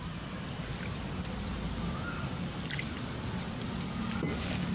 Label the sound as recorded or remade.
recorded